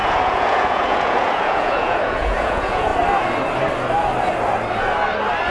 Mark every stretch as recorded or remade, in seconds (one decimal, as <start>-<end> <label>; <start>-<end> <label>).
0.0-2.9 remade; 2.9-5.5 recorded